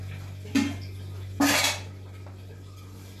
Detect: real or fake real